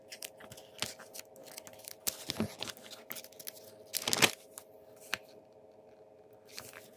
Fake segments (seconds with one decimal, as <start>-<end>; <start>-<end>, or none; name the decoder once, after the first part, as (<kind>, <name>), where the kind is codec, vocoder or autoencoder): none